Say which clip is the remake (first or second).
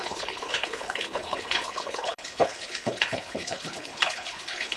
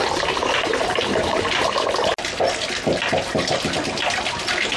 first